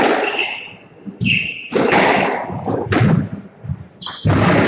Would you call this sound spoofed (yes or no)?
no